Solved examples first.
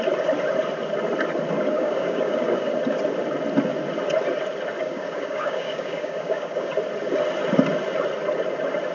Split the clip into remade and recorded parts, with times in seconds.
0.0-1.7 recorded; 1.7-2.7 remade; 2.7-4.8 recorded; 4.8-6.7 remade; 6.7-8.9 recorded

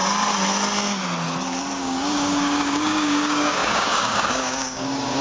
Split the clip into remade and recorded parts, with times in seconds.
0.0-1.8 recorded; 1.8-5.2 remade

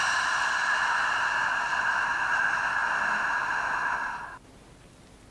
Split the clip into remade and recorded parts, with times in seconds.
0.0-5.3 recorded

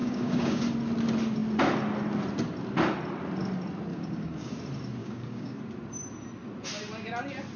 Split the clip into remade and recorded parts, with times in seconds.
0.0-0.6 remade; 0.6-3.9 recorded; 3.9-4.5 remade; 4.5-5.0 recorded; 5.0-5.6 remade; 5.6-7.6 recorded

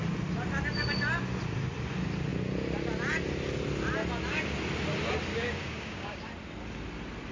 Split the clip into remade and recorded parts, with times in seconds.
0.0-5.3 recorded; 5.3-6.2 remade; 6.2-7.3 recorded